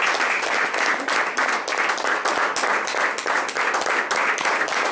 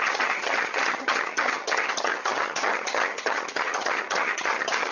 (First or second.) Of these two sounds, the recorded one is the first